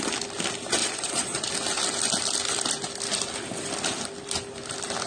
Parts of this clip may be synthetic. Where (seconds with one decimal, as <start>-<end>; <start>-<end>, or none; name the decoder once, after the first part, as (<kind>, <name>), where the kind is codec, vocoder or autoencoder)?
0.8-1.5 (vocoder, Vocos)